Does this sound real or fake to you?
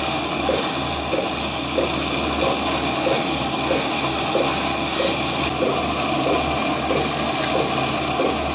real